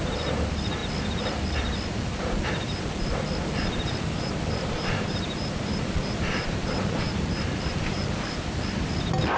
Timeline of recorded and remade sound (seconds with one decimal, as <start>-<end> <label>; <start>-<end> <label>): 0.0-1.9 recorded; 1.9-3.2 remade; 3.2-3.6 recorded; 3.6-8.1 remade; 8.1-9.4 recorded